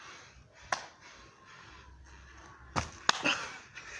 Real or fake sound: real